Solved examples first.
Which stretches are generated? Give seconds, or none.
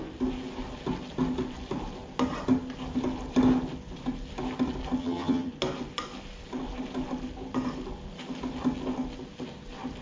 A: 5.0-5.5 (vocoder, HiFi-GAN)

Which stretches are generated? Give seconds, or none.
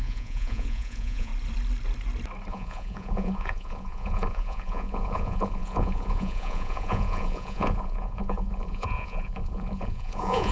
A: 0.0-1.3 (vocoder, Vocos); 2.5-10.5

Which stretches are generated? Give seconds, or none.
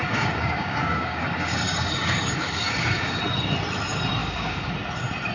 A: 0.0-3.2 (codec, DAC); 4.2-4.7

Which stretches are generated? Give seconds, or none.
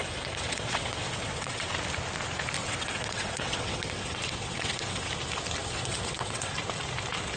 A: 0.0-1.7 (vocoder, WaveNeXt); 2.6-5.1; 5.6-6.5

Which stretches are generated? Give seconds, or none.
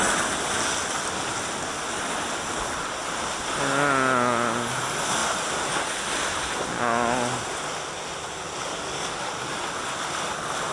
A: 8.7-9.3 (codec, DAC)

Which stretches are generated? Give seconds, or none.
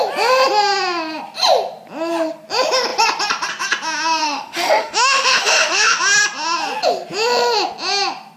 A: 4.2-6.0 (autoencoder, DAC-VAE)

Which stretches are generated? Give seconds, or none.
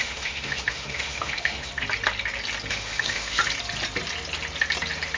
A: 0.0-1.7 (autoencoder, DAC-VAE); 2.7-3.4